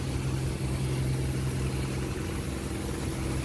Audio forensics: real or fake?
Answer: real